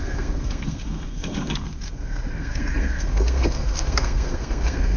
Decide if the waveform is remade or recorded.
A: remade